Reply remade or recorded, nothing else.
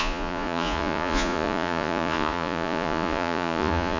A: remade